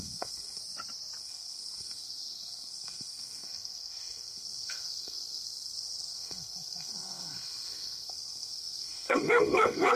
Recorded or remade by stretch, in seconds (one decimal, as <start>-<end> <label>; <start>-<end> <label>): 0.0-0.6 remade; 0.6-1.2 recorded; 1.2-10.0 remade